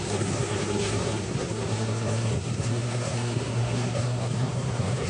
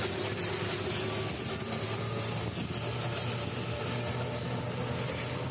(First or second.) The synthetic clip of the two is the first